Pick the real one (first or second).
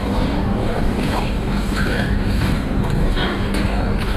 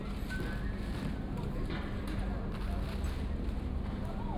second